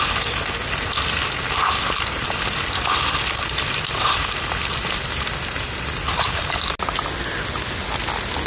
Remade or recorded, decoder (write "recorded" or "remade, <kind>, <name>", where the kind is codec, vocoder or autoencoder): recorded